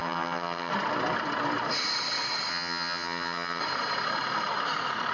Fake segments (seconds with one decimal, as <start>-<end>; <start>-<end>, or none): 0.0-0.7; 2.5-3.6